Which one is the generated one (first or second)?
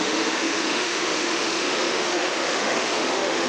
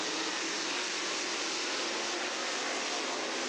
first